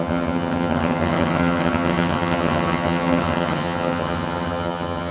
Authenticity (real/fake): fake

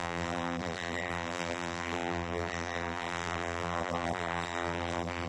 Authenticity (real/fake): fake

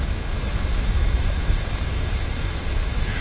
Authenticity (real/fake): fake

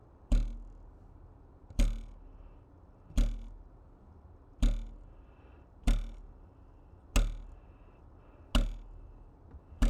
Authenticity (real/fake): real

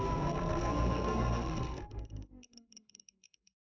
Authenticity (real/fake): fake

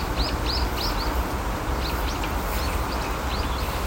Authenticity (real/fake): real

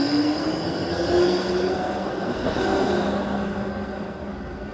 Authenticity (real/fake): fake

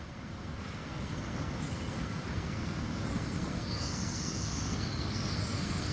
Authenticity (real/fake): fake